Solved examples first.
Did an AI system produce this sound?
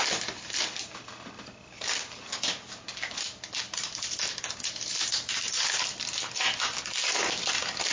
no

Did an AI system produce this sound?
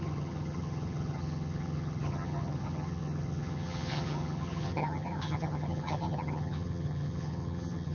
yes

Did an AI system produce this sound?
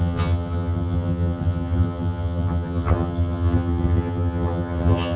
yes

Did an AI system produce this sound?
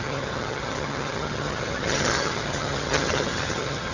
yes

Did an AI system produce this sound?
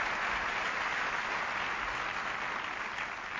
no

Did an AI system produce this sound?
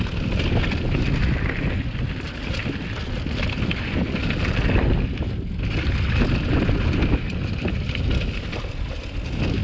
no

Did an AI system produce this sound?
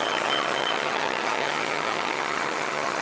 yes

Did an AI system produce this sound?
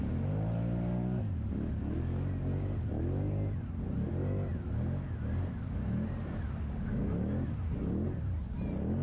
no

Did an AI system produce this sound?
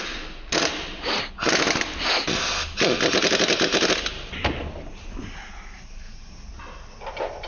no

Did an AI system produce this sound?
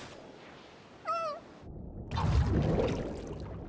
no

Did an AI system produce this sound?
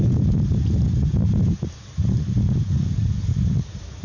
no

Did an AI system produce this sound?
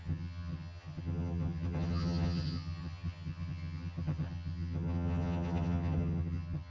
yes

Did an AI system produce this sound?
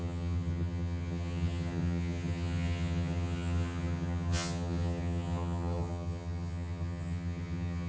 yes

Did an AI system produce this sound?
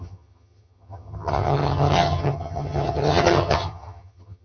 yes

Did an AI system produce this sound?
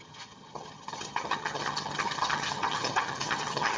yes